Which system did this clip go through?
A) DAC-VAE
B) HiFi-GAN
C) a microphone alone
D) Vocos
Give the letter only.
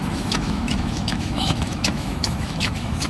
A